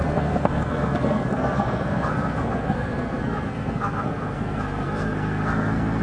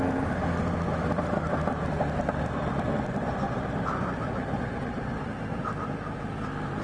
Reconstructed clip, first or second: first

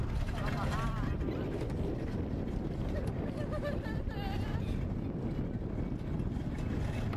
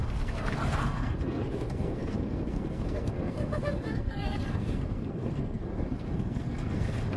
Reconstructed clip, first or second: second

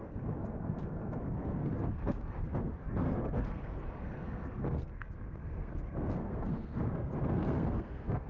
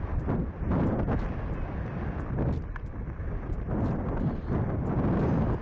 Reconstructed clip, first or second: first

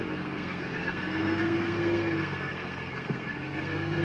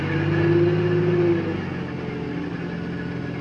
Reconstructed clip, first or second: first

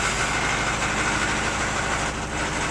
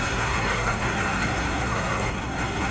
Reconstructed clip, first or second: second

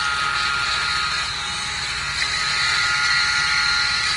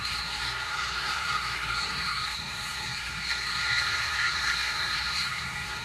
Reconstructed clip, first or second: second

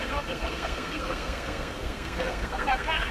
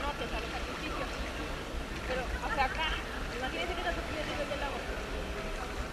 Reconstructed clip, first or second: first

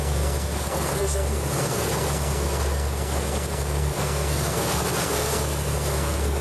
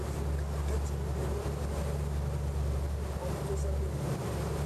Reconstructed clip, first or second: first